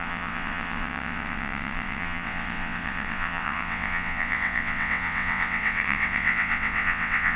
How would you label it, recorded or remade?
remade